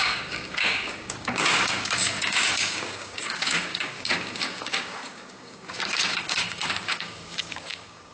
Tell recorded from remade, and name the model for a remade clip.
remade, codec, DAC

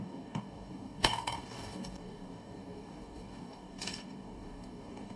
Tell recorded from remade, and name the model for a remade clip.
remade, codec, DAC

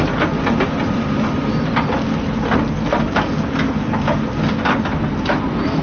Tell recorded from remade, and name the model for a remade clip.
recorded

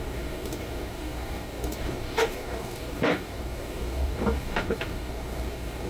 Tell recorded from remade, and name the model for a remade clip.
remade, codec, DAC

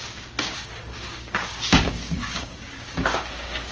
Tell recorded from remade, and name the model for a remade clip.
remade, codec, DAC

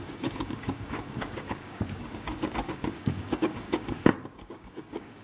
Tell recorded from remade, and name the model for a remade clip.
remade, codec, DAC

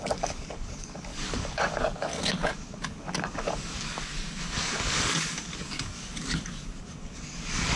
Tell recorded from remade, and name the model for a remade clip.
remade, codec, DAC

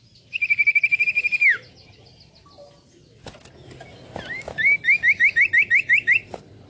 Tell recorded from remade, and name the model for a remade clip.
recorded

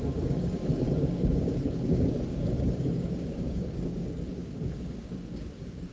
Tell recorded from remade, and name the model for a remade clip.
remade, codec, DAC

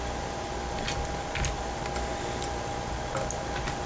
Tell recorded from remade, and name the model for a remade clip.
recorded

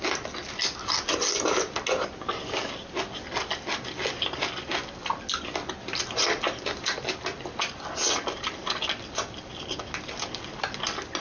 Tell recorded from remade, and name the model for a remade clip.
recorded